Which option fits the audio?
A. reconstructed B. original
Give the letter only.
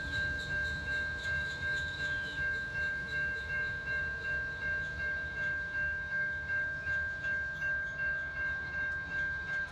A